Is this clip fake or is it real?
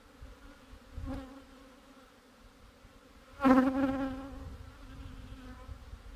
real